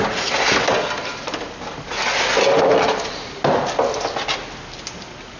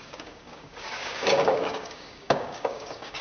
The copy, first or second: second